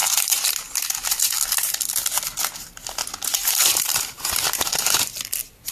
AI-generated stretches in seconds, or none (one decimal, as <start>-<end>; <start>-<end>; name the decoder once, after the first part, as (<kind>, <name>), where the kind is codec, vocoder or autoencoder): 0.0-0.5 (vocoder, BigVGAN v2); 3.0-5.1